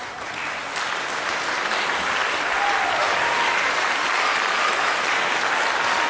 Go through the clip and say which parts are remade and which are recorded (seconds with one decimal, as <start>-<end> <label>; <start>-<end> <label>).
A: 0.0-6.1 recorded